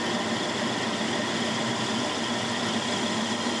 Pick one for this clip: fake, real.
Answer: real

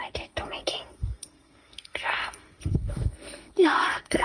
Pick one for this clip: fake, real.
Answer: fake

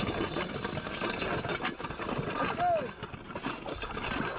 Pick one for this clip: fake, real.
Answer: real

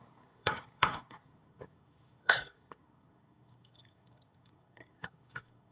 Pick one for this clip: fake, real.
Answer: fake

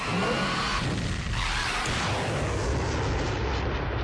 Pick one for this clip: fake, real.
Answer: real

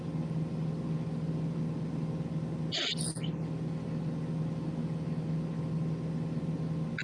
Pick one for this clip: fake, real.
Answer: real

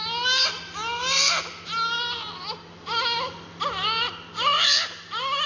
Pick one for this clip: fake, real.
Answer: real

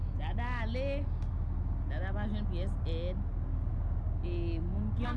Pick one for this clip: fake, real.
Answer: real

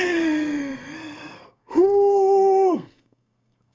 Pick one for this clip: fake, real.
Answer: fake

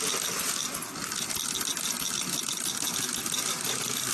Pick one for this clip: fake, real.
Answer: real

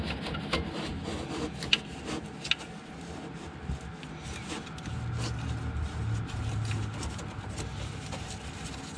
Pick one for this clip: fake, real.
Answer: real